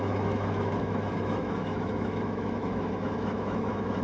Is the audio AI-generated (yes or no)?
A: yes